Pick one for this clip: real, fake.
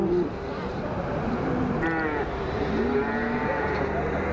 fake